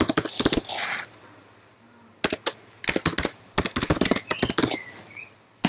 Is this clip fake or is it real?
real